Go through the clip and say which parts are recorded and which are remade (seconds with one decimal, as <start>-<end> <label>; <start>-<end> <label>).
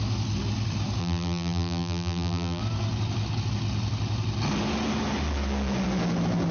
0.0-1.0 recorded; 1.0-2.6 remade; 2.6-6.5 recorded